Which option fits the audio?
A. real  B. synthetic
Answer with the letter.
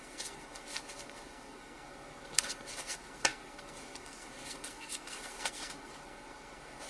B